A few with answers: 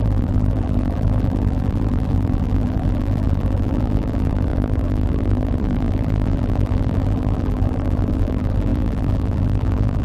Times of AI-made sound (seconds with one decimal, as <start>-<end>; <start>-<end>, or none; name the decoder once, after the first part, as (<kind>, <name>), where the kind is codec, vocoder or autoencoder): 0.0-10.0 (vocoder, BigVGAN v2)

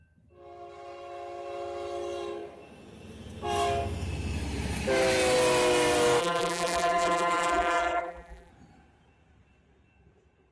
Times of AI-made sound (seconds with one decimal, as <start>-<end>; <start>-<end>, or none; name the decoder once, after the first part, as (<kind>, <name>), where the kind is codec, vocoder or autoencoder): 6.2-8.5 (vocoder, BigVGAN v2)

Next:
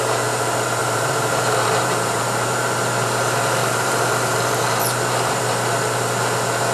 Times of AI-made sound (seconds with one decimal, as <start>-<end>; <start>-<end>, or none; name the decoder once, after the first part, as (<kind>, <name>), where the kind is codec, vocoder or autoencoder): 0.8-2.9 (vocoder, BigVGAN v2); 3.6-5.4

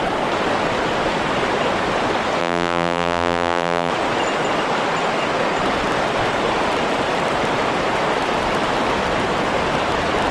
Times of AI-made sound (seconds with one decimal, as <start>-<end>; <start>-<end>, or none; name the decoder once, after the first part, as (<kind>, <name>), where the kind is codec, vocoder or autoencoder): 2.4-3.9 (vocoder, BigVGAN v2)

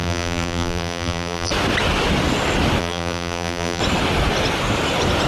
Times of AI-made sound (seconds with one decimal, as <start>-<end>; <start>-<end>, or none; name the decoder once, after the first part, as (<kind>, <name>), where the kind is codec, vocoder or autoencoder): 0.0-1.5 (vocoder, BigVGAN v2); 2.8-3.8

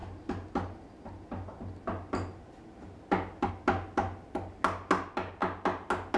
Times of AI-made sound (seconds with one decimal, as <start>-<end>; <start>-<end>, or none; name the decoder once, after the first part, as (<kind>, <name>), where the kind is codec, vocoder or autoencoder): none

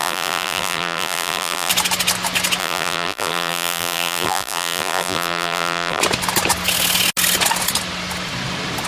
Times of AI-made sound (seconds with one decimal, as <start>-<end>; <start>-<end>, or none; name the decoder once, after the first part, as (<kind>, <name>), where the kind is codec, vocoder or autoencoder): 0.0-1.7 (vocoder, BigVGAN v2); 2.6-6.0